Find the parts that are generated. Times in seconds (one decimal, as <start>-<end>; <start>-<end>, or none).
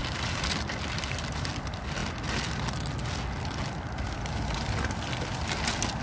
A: none